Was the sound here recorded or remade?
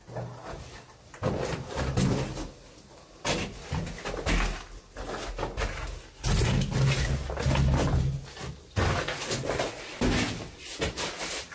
recorded